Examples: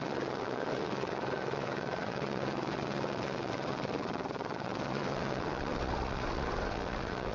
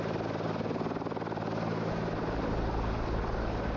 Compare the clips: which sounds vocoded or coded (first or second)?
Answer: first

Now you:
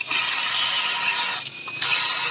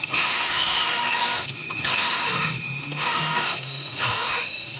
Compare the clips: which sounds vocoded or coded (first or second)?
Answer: second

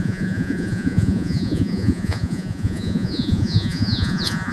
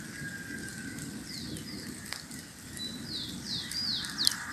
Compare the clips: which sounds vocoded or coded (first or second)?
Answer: first